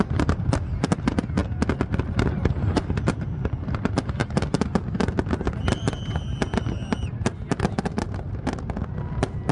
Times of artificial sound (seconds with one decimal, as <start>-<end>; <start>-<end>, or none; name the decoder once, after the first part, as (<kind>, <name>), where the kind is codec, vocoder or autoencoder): 0.0-1.4 (vocoder, BigVGAN v2); 2.3-4.2; 8.9-9.5